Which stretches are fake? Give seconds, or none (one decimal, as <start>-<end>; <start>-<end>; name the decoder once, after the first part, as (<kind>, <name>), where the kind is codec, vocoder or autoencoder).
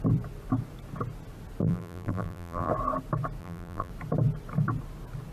1.6-2.7 (vocoder, BigVGAN v2); 3.4-3.9